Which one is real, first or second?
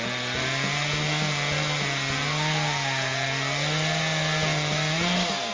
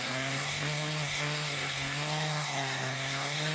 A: first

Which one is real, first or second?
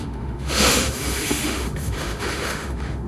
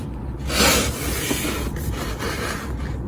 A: second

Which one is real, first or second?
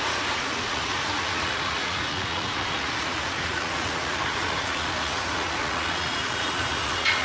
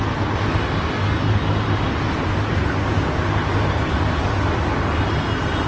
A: second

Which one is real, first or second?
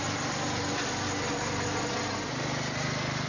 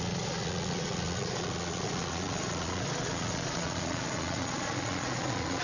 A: first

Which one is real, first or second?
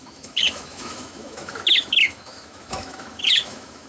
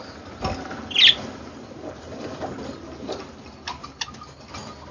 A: second